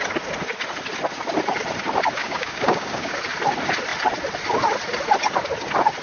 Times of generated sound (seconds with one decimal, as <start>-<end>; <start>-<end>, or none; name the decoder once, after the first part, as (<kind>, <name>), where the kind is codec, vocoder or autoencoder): 2.2-3.2 (codec, DAC)